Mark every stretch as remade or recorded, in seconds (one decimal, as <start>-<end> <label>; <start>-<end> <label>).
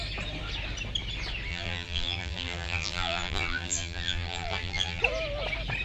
0.0-1.5 recorded; 1.5-5.0 remade; 5.0-5.8 recorded